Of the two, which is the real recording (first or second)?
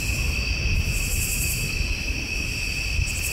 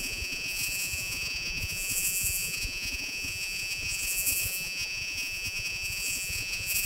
first